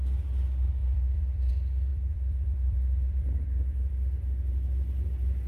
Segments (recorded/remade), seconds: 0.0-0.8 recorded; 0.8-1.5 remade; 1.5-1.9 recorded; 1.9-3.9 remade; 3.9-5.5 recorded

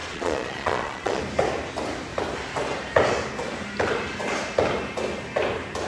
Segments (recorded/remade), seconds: 0.0-1.2 remade; 1.2-5.9 recorded

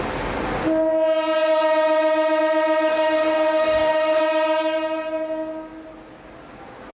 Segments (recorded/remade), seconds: 0.0-2.9 recorded; 2.9-4.2 remade; 4.2-6.9 recorded

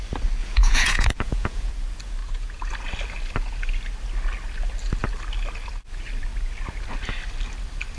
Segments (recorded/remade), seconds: 0.0-0.4 recorded; 0.4-1.7 remade; 1.7-2.2 recorded; 2.2-2.7 remade; 2.7-8.0 recorded

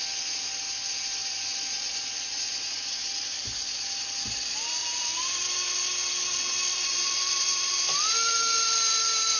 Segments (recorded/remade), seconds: 0.0-9.4 recorded

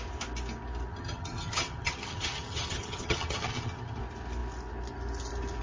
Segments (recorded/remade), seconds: 0.0-0.9 recorded; 0.9-4.0 remade; 4.0-5.6 recorded